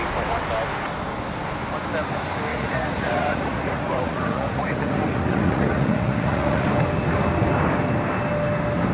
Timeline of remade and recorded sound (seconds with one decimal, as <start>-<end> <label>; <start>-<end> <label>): 0.0-2.5 recorded; 2.5-6.7 remade; 6.7-8.9 recorded